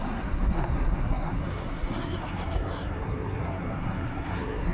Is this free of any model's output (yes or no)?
no